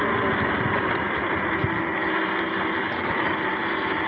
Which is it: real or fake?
real